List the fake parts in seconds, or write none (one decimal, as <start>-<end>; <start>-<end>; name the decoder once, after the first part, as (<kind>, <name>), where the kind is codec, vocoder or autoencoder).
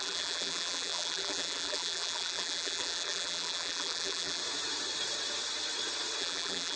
0.0-4.4 (vocoder, BigVGAN v2); 6.2-6.8